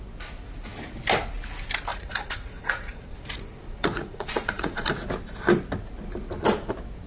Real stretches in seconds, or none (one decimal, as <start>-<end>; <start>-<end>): 0.0-1.9; 4.9-7.1